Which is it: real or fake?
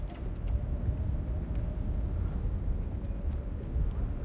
real